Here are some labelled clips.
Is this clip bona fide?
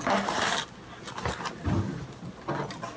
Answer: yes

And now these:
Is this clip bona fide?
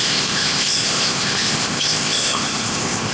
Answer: no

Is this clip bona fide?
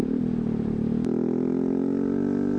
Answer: yes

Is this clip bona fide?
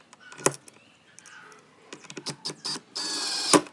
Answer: yes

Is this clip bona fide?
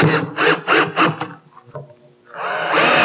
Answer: yes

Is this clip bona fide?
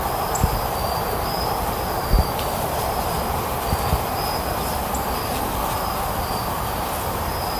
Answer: yes